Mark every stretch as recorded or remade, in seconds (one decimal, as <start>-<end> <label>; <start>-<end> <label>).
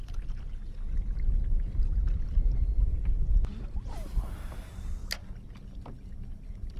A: 0.0-5.2 recorded; 5.2-6.8 remade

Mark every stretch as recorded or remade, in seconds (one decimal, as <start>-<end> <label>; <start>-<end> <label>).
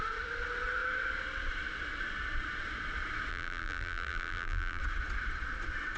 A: 0.0-3.3 recorded; 3.3-4.8 remade; 4.8-6.0 recorded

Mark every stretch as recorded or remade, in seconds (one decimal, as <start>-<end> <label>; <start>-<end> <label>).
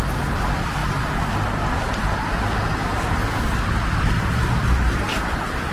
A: 0.0-0.8 remade; 0.8-4.2 recorded; 4.2-5.7 remade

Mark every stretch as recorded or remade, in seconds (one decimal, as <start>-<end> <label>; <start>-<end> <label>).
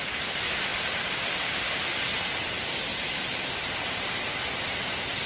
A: 0.0-2.9 recorded; 2.9-4.1 remade; 4.1-5.3 recorded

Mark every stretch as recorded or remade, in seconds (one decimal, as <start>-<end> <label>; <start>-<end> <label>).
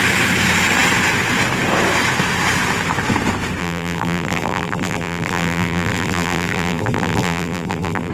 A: 0.0-3.6 recorded; 3.6-8.1 remade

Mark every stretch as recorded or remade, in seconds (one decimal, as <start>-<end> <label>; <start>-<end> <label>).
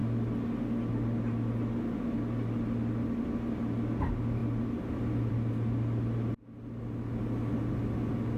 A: 0.0-8.4 recorded